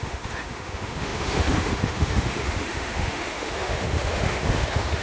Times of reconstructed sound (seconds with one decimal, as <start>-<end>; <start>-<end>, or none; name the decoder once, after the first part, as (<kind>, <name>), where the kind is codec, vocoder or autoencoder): 0.0-5.0 (autoencoder, DAC-VAE)